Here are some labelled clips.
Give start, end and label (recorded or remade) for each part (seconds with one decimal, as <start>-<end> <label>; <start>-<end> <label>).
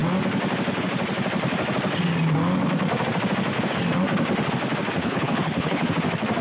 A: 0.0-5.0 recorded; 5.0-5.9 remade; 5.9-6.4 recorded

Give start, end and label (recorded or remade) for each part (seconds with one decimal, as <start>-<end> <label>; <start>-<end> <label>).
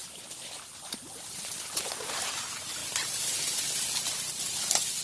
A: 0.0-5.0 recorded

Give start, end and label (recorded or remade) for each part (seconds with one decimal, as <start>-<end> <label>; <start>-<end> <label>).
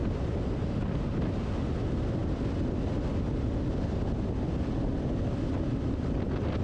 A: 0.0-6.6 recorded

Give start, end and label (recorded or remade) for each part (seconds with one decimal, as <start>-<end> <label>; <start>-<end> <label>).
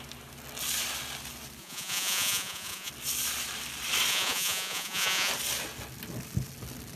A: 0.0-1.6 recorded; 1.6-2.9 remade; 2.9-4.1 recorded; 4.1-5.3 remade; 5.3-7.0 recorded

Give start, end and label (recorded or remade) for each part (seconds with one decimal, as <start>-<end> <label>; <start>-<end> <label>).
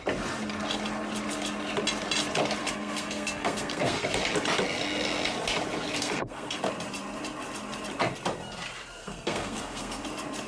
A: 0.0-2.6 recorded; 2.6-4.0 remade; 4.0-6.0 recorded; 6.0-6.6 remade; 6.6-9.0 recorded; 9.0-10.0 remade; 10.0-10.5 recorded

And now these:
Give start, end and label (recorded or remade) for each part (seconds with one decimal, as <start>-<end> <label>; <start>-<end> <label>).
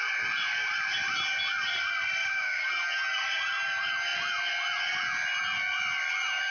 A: 0.0-2.2 recorded; 2.2-2.7 remade; 2.7-6.5 recorded